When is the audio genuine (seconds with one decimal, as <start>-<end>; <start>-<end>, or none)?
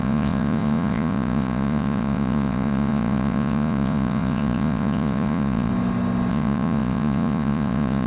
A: 5.7-6.3